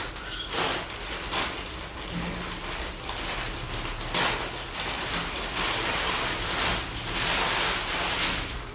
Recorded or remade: recorded